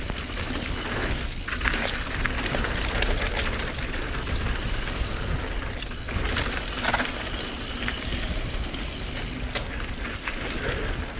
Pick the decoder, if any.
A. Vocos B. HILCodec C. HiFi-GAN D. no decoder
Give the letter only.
D